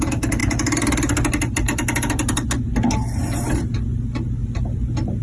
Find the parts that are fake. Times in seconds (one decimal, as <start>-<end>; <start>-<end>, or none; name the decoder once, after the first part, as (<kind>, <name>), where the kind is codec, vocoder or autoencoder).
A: none